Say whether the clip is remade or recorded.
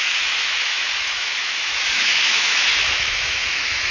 remade